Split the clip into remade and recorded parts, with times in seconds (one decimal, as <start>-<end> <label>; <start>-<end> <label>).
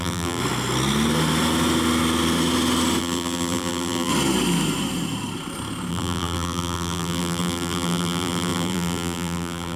0.0-0.4 remade; 0.4-3.0 recorded; 3.0-4.1 remade; 4.1-5.9 recorded; 5.9-9.8 remade